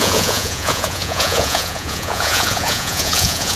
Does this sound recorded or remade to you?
remade